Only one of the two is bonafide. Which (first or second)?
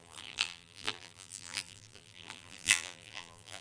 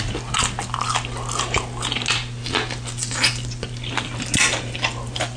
second